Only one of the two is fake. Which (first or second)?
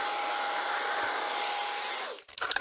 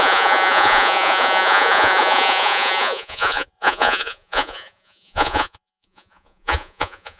second